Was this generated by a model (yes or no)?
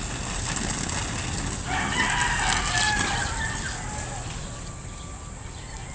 no